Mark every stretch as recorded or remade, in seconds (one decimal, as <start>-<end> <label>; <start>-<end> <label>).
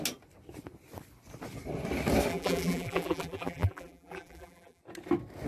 0.0-2.3 recorded; 2.3-4.8 remade; 4.8-5.5 recorded